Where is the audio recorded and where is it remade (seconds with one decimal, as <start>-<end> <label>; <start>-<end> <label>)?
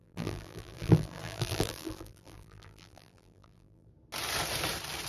0.0-3.9 remade; 3.9-5.1 recorded